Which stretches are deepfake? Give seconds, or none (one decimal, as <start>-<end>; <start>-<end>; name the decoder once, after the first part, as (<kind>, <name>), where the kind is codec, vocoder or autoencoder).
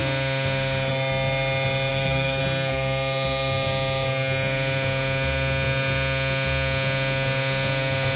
1.9-2.4 (codec, DAC)